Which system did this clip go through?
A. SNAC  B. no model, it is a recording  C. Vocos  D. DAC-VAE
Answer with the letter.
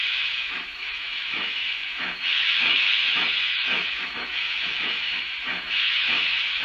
D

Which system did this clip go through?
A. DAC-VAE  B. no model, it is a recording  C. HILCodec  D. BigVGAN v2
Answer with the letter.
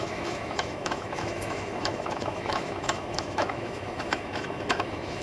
A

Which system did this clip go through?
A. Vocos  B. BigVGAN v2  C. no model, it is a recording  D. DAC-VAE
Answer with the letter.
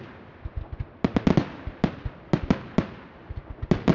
C